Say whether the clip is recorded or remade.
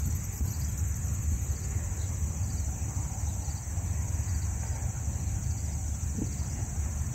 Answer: recorded